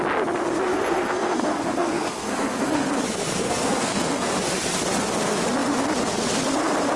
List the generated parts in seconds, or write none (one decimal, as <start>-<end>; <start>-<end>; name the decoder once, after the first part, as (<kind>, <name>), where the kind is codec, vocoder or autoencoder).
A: 0.7-2.9 (codec, SNAC); 3.4-4.3